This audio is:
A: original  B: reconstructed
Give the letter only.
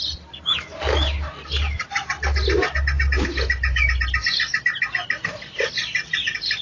A